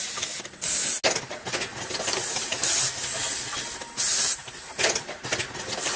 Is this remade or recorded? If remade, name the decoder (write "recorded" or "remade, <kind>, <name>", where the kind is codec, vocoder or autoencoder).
recorded